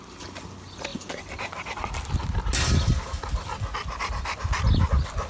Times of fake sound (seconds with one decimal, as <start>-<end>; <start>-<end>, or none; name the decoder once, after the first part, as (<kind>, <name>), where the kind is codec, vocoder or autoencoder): none